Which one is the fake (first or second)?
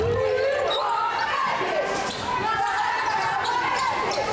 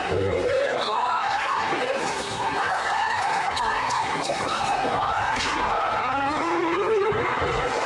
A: second